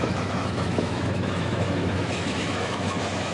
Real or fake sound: fake